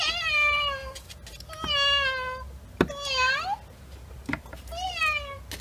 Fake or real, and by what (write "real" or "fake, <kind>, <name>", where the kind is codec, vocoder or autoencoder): real